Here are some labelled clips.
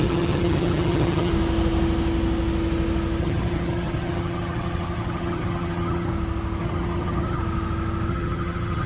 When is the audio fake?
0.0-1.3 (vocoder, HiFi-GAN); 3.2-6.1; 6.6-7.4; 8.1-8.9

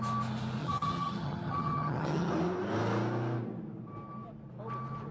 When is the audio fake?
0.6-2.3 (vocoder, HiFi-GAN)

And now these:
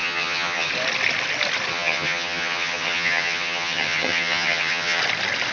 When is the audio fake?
0.0-0.7 (vocoder, HiFi-GAN); 1.7-5.0

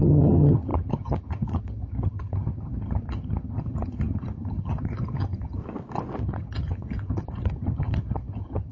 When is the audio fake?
0.0-5.6 (vocoder, HiFi-GAN); 6.2-8.7

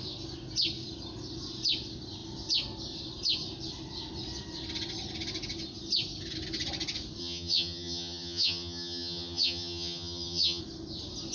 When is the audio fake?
7.2-10.6 (vocoder, HiFi-GAN)

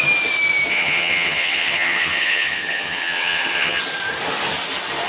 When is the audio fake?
0.7-3.8 (vocoder, HiFi-GAN)